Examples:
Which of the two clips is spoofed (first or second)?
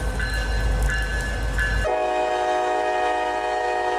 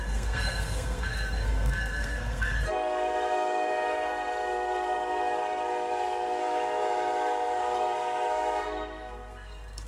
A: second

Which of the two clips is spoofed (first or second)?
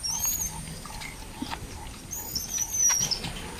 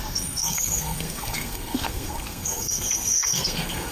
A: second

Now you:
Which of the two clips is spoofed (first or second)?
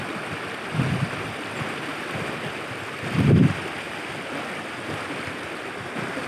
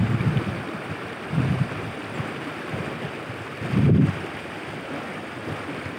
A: second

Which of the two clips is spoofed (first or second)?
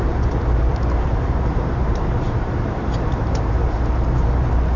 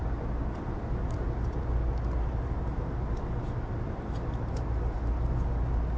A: first